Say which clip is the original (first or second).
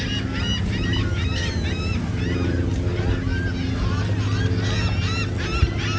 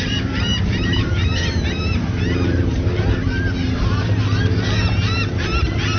first